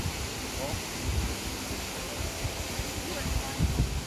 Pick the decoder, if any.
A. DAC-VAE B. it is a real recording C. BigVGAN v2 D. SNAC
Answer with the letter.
B